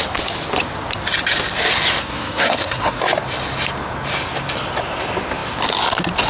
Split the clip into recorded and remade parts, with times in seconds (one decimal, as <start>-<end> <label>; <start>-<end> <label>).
0.0-2.0 recorded; 2.0-3.0 remade; 3.0-6.3 recorded